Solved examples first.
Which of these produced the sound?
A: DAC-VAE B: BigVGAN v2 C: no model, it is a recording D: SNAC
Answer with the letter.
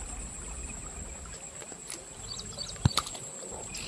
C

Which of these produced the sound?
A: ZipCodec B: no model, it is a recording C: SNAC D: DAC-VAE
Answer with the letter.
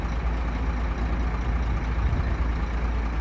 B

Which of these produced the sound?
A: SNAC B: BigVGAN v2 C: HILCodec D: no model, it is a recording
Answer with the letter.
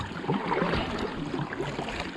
D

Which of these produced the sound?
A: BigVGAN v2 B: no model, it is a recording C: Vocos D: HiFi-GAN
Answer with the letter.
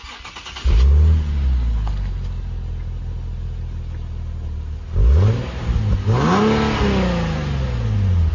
B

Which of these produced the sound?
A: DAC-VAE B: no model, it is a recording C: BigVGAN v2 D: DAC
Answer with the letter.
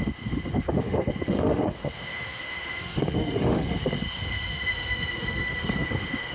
A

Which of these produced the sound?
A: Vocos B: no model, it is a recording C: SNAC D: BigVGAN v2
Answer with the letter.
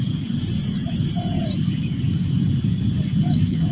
A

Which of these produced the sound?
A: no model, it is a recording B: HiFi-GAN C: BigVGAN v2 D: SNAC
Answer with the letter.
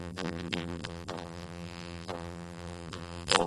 C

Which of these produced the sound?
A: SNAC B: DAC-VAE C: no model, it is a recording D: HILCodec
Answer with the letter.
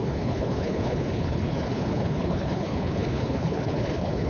D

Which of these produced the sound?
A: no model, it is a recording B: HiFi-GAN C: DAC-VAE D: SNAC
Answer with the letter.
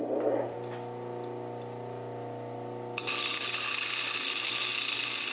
A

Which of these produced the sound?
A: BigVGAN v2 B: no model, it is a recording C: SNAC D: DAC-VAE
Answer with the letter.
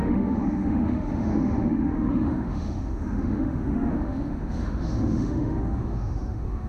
D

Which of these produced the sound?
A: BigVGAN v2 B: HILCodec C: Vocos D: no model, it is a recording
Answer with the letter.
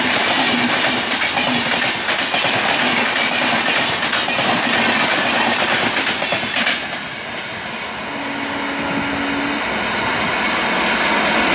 D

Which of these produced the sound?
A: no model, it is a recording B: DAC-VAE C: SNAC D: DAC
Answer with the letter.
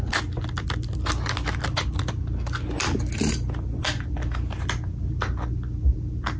A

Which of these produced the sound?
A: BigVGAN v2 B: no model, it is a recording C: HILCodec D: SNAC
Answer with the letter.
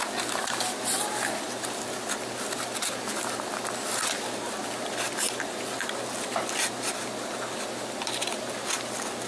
B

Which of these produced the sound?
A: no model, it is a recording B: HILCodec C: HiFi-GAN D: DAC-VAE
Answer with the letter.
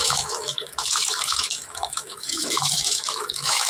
D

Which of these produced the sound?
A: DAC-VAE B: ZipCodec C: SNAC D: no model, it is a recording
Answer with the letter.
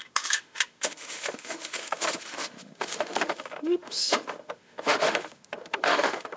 A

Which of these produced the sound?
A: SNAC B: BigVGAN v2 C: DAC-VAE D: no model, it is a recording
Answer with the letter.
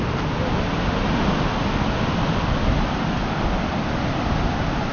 D